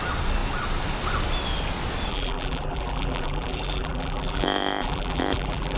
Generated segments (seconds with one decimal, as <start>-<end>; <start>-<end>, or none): 2.1-5.8